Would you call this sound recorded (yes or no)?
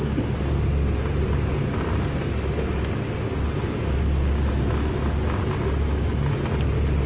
yes